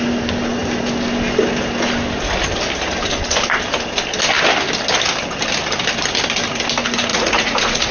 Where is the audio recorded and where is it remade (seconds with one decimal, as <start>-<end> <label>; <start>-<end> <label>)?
0.0-7.1 recorded; 7.1-7.9 remade